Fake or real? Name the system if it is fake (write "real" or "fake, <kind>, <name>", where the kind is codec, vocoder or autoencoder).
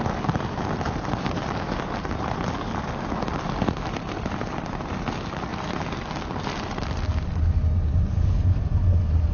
real